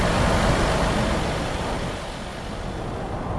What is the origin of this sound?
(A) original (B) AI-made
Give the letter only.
A